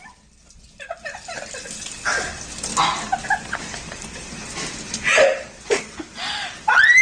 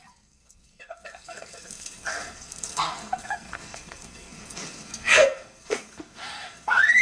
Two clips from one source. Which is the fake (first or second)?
second